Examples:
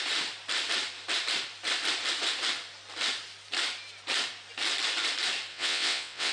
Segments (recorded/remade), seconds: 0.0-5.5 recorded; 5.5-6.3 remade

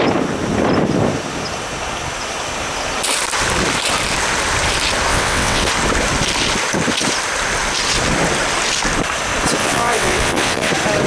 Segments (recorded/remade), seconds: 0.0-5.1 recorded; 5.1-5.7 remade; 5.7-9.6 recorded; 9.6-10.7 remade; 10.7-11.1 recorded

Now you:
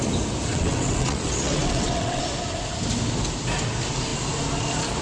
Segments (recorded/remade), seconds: 0.0-0.5 recorded; 0.5-2.2 remade; 2.2-5.0 recorded

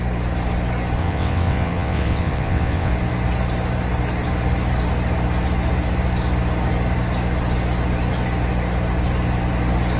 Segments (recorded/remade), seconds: 0.0-1.0 recorded; 1.0-2.9 remade; 2.9-10.0 recorded

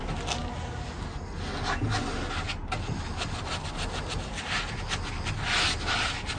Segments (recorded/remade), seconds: 0.0-6.4 recorded